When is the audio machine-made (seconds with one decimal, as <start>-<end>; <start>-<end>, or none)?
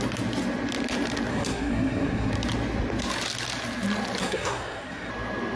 1.3-2.3; 4.2-5.1